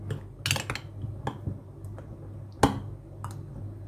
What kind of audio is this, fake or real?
real